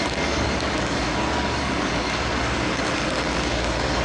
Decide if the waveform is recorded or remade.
remade